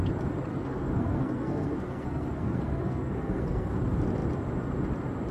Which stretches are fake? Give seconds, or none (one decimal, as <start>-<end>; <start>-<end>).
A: 0.5-3.7